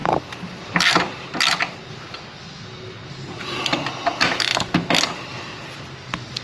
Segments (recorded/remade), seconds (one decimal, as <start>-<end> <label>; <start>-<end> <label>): 0.0-6.4 recorded